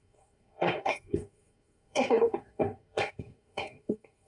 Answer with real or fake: fake